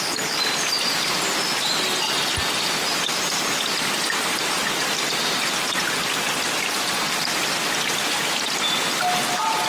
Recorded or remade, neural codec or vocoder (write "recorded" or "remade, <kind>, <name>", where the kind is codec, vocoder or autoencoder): recorded